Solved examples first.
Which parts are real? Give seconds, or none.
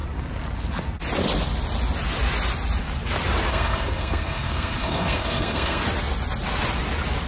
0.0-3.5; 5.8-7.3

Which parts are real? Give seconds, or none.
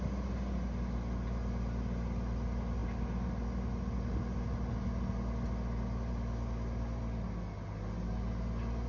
0.0-8.9